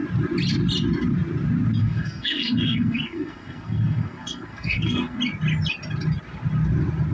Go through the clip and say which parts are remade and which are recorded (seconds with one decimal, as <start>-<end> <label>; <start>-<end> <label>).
0.0-1.8 recorded; 1.8-5.2 remade; 5.2-7.1 recorded